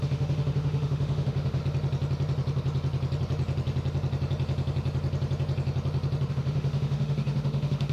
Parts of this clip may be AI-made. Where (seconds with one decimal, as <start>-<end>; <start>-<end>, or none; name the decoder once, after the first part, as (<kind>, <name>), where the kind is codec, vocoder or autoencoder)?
0.0-1.6 (autoencoder, DAC-VAE); 6.3-7.9